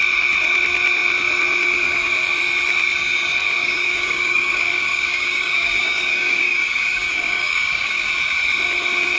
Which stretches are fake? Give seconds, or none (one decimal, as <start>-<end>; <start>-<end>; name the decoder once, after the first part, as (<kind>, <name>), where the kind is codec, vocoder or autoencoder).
3.6-8.1 (codec, DAC)